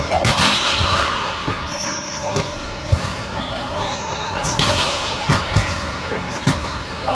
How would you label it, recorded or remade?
remade